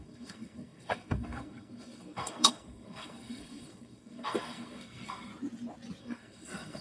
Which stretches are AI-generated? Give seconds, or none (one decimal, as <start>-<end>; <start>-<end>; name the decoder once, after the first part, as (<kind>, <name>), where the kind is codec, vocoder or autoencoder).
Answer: 0.0-5.3 (codec, SNAC); 6.0-6.8